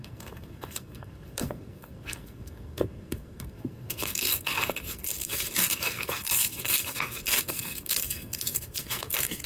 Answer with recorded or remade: remade